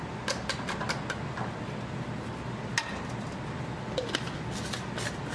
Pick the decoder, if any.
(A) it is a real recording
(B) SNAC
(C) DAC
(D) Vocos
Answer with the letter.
A